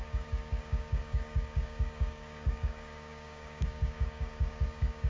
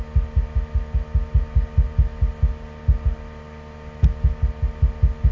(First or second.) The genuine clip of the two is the second